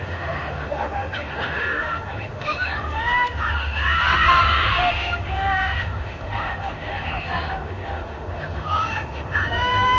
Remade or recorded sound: remade